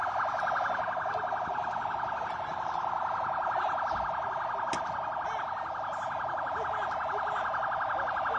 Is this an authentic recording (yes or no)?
yes